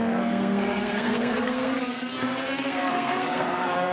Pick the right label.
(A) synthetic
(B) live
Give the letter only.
A